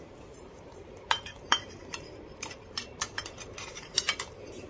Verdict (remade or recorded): remade